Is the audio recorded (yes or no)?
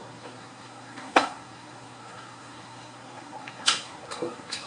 no